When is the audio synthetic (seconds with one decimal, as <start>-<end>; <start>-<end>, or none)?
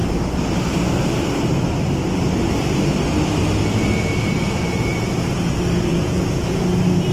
5.9-6.5